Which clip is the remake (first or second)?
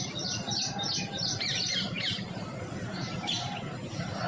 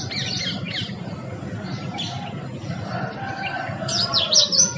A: first